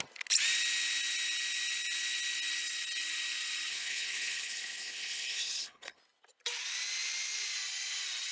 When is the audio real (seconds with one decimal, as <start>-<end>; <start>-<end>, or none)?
0.0-3.7; 6.0-8.3